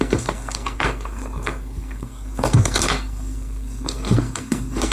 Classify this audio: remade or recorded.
remade